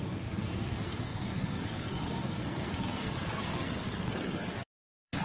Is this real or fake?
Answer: fake